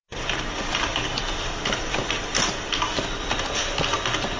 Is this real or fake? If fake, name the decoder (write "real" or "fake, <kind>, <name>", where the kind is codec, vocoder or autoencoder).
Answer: real